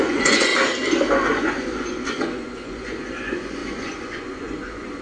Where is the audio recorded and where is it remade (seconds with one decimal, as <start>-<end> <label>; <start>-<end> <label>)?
0.0-0.5 remade; 0.5-1.4 recorded; 1.4-5.0 remade